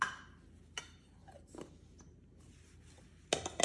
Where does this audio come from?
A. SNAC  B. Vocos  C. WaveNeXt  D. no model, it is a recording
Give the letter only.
D